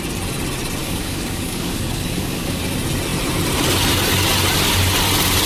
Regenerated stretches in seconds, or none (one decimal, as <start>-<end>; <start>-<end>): 0.8-2.6